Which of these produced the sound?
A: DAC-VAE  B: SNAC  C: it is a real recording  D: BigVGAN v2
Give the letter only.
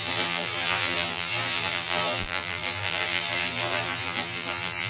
D